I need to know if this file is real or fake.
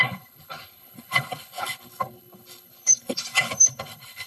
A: fake